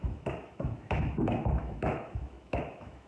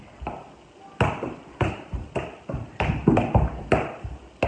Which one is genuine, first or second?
second